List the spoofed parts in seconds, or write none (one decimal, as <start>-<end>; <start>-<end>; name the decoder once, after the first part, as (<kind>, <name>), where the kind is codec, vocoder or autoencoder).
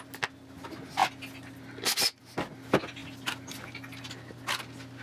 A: none